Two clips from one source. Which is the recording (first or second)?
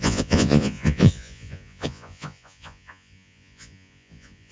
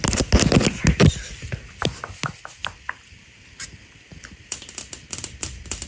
second